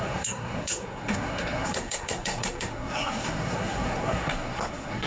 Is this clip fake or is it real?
fake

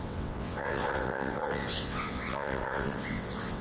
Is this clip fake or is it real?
fake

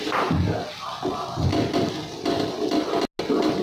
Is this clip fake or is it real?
real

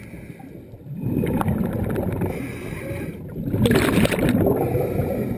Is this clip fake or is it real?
real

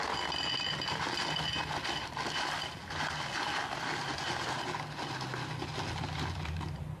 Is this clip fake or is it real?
real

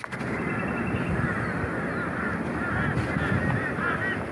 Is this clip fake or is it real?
real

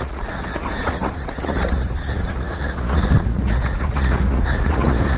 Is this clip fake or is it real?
fake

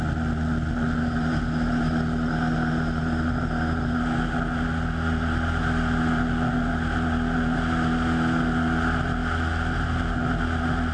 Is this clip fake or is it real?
real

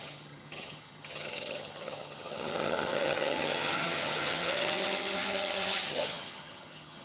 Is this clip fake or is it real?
fake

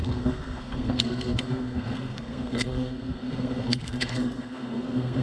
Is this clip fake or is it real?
fake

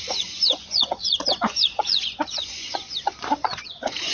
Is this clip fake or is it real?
fake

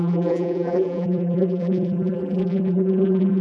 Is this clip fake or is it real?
fake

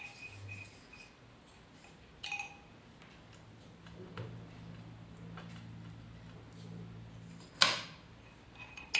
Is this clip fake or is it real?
real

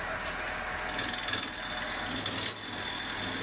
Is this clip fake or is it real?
real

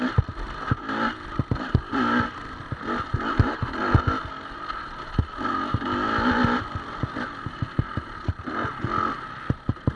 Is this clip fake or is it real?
real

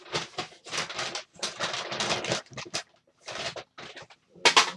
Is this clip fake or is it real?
real